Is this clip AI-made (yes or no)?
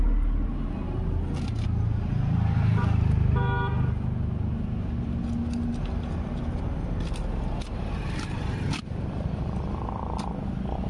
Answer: no